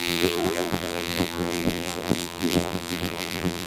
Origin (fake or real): fake